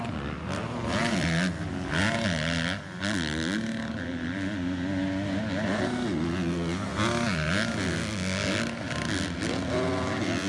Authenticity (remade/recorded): recorded